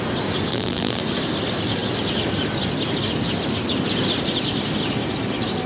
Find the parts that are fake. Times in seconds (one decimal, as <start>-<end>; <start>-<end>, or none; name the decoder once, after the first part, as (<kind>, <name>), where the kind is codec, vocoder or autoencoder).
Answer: 0.5-1.0 (vocoder, BigVGAN v2)